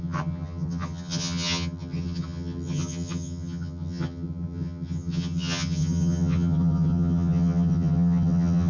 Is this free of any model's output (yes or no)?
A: no